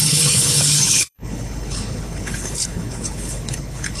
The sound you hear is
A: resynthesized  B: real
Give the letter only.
A